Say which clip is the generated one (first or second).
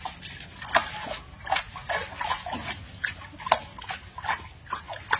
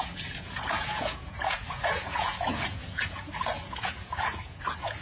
second